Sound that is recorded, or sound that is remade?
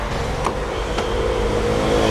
recorded